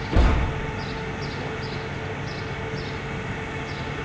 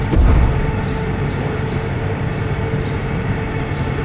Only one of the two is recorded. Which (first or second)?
first